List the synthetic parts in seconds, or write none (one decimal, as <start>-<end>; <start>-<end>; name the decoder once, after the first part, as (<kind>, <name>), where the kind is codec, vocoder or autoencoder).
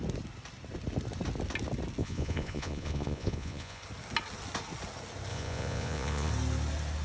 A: 2.0-3.8 (vocoder, Vocos); 5.3-6.3